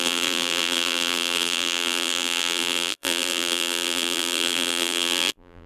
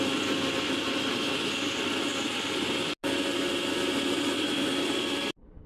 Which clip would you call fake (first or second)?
first